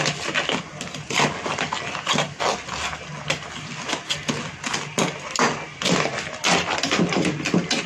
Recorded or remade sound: recorded